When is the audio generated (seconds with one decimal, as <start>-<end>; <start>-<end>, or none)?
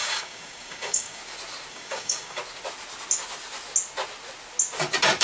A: 0.0-1.2; 1.7-2.4